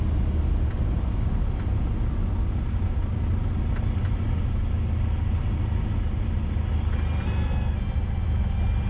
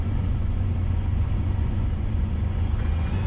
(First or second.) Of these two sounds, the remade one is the second